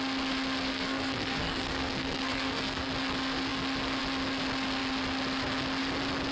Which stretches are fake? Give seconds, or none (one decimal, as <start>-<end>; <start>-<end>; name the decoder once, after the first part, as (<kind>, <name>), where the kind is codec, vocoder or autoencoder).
0.7-2.9 (codec, SNAC)